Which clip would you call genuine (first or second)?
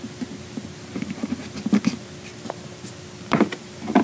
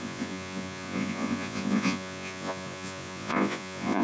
first